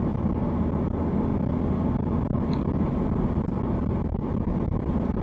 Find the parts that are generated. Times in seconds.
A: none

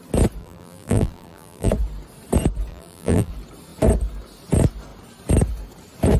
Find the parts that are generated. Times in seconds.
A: 0.4-1.7; 2.7-3.3

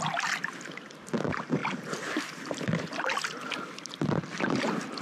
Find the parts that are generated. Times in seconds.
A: 1.6-4.6

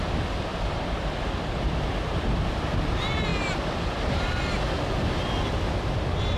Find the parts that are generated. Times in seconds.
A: 0.5-1.9

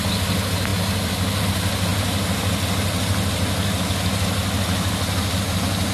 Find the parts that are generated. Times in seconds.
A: none

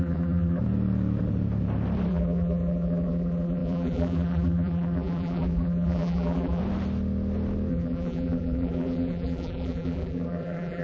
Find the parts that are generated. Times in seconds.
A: 0.0-0.6; 2.1-6.6; 7.7-10.8

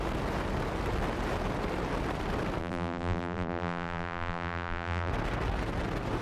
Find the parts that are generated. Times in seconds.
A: 2.6-5.1